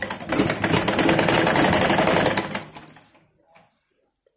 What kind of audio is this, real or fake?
real